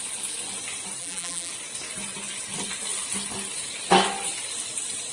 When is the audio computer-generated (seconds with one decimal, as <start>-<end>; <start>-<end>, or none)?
1.0-1.5